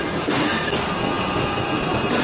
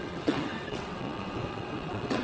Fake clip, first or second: second